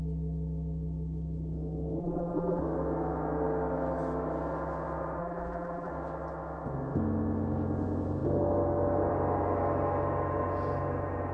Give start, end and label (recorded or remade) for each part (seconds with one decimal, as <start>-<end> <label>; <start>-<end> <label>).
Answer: 0.0-2.0 recorded; 2.0-2.6 remade; 2.6-5.2 recorded; 5.2-5.9 remade; 5.9-11.3 recorded